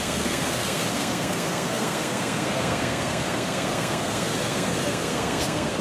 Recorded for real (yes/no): no